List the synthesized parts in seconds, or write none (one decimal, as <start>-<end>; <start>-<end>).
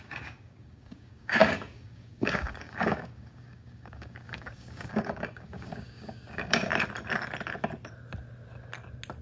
0.0-6.7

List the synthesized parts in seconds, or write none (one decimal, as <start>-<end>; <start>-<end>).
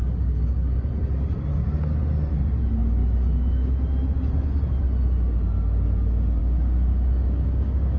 0.0-0.9; 6.4-8.0